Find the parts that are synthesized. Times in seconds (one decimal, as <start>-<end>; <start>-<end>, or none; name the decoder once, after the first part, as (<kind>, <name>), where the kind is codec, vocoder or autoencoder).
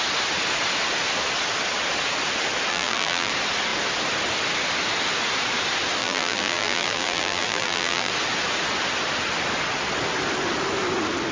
2.7-3.3 (vocoder, BigVGAN v2); 6.0-8.1